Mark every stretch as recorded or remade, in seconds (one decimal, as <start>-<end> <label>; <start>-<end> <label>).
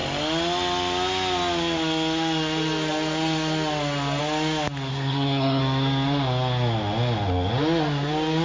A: 0.0-4.9 recorded; 4.9-5.6 remade; 5.6-8.4 recorded